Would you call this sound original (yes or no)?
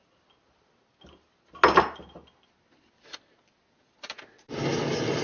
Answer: yes